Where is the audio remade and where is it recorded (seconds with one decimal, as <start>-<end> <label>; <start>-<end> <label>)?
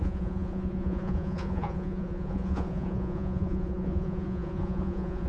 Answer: 0.0-5.3 remade